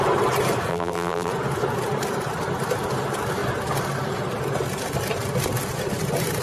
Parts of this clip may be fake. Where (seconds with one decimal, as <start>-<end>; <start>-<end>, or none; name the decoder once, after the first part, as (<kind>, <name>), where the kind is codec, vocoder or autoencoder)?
0.7-1.3 (vocoder, BigVGAN v2)